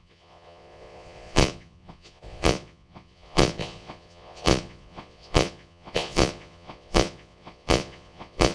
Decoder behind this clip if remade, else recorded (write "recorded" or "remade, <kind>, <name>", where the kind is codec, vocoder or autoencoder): remade, vocoder, Vocos